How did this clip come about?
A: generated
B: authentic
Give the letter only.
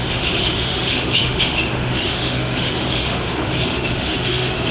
A